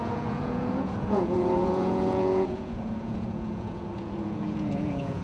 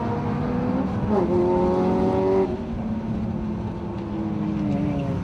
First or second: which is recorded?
second